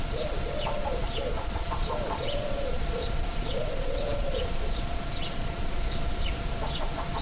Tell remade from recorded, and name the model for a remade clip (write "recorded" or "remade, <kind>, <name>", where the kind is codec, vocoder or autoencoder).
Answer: remade, vocoder, Vocos